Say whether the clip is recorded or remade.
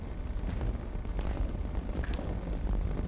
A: recorded